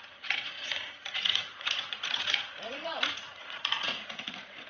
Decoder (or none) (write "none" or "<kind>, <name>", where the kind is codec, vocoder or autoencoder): vocoder, Vocos